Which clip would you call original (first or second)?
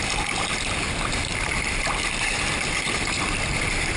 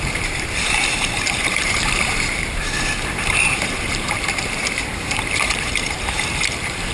first